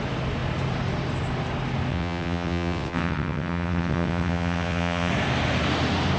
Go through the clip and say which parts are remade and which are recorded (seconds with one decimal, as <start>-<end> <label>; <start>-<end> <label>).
0.0-1.9 recorded; 1.9-5.1 remade; 5.1-6.2 recorded